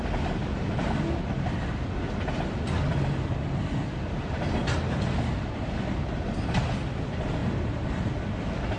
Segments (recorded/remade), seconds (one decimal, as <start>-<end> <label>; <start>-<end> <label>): 0.0-8.8 recorded